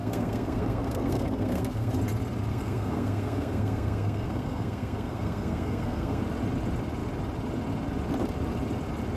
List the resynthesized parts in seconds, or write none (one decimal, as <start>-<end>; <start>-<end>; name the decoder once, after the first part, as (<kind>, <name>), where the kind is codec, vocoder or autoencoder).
0.0-1.9 (codec, SNAC); 2.5-6.2